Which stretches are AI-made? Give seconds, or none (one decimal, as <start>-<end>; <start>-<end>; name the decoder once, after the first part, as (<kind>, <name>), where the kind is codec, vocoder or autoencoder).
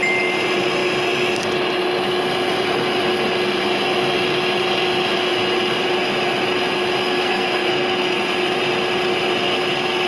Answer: 7.0-7.7 (codec, SNAC)